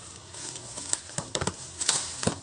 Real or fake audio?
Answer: fake